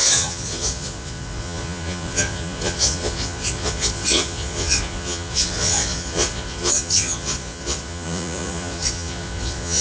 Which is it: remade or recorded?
remade